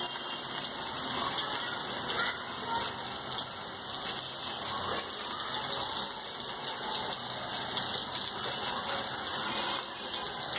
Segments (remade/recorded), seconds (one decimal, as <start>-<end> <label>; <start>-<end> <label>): 0.0-10.6 recorded